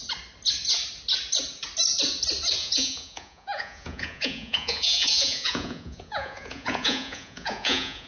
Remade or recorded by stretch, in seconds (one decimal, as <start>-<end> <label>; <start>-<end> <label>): 0.0-2.6 recorded; 2.6-8.1 remade